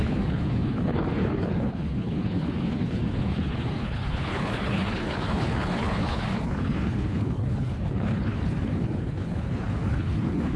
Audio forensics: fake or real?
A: fake